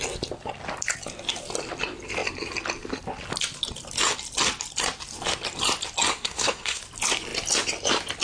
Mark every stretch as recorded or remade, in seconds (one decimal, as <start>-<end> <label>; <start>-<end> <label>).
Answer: 0.0-6.1 recorded; 6.1-6.8 remade; 6.8-8.2 recorded